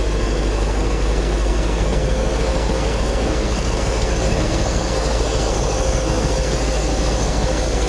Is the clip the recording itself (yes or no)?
no